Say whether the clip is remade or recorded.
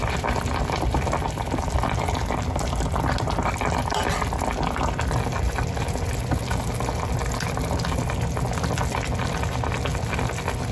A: recorded